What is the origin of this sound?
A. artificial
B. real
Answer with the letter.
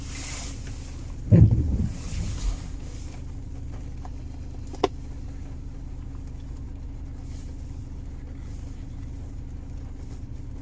B